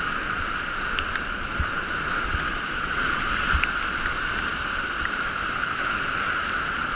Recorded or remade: recorded